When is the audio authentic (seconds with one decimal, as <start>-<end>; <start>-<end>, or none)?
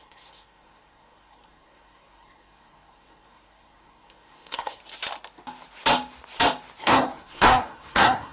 4.8-6.8